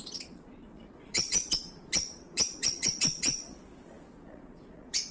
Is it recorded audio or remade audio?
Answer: remade